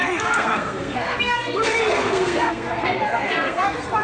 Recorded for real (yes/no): no